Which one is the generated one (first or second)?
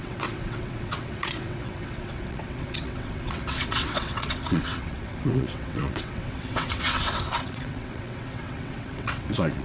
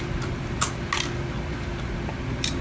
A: first